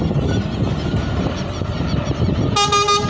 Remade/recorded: recorded